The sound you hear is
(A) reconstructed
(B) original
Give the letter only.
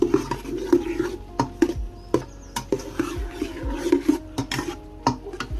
B